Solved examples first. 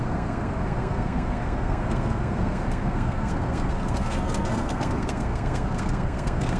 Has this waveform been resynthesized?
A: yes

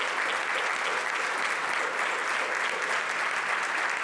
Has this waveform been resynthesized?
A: no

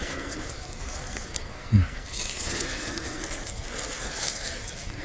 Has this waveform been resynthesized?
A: yes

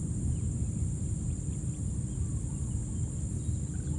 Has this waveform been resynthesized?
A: no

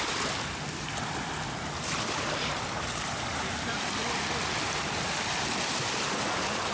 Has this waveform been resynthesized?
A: no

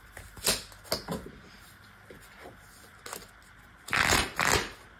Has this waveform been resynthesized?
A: no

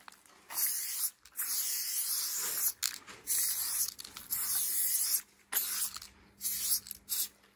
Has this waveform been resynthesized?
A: no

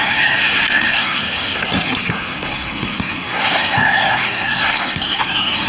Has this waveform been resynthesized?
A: yes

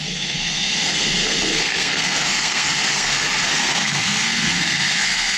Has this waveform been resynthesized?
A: yes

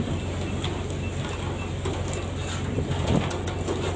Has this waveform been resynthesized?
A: no